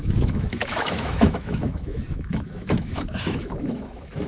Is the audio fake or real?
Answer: fake